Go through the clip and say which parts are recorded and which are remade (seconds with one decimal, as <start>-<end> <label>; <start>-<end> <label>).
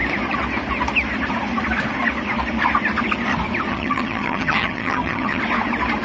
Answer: 0.0-3.7 recorded; 3.7-5.4 remade; 5.4-6.0 recorded